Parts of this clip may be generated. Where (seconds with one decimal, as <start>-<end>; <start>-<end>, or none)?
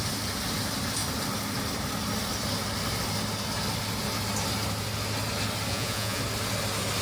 5.7-6.2